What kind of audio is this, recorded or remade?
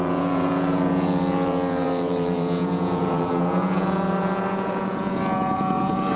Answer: remade